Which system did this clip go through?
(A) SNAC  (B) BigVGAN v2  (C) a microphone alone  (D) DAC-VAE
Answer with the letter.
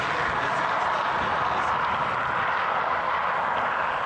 C